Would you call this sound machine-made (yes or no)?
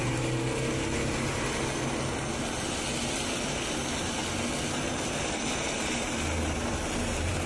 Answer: no